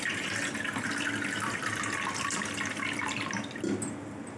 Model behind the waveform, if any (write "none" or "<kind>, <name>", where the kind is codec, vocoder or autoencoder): none